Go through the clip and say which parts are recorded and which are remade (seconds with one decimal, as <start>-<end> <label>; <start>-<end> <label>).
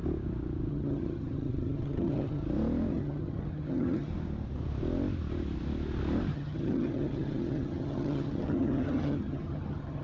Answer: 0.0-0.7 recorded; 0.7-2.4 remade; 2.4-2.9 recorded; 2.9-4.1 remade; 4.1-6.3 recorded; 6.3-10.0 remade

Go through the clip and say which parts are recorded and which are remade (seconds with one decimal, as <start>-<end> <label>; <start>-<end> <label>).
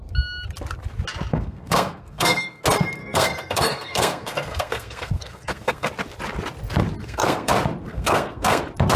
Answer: 0.0-1.3 recorded; 1.3-2.6 remade; 2.6-3.0 recorded; 3.0-5.9 remade; 5.9-7.0 recorded; 7.0-7.5 remade; 7.5-7.9 recorded; 7.9-8.6 remade; 8.6-9.0 recorded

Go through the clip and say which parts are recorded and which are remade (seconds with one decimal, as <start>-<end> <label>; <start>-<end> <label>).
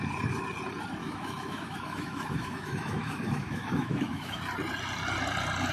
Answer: 0.0-1.0 recorded; 1.0-4.4 remade; 4.4-5.7 recorded